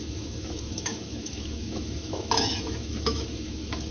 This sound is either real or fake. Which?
fake